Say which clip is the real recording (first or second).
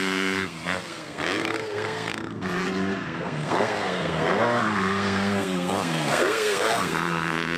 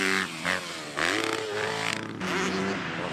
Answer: second